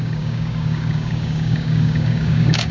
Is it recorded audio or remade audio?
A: remade